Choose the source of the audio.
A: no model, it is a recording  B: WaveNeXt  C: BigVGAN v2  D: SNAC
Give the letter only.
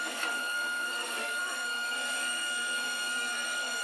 D